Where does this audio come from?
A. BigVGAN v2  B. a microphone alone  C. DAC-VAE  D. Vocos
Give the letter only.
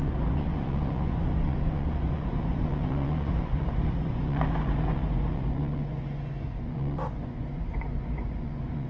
D